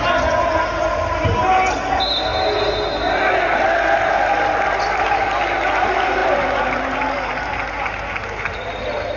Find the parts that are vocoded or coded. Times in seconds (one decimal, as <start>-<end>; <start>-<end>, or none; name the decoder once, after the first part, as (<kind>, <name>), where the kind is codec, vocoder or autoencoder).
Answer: none